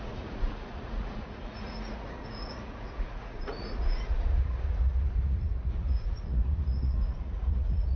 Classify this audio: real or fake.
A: fake